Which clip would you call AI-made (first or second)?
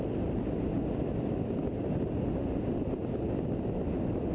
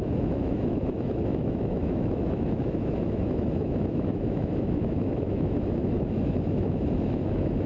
second